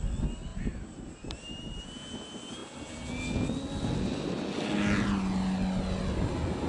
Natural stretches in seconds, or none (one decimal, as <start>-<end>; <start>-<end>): 0.0-0.5; 1.8-6.7